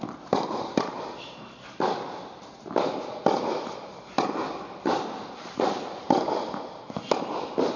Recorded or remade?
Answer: recorded